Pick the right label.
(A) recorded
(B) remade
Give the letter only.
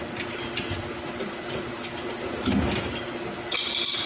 A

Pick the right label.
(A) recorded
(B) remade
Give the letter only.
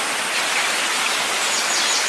A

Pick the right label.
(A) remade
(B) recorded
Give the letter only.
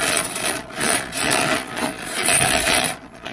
A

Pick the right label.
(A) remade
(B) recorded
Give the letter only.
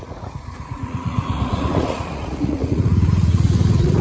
A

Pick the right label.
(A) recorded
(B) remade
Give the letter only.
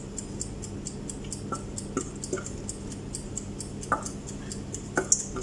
A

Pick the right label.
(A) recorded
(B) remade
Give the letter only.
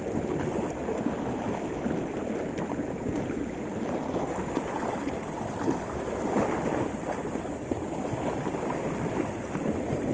A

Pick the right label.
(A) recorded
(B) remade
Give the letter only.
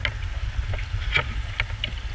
A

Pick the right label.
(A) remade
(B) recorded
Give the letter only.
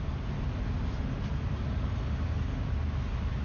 B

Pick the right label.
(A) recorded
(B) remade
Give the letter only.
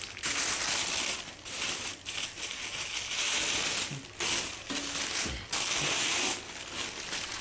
A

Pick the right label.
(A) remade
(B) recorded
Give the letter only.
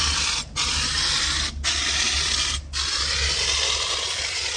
B